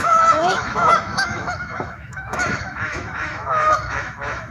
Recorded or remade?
remade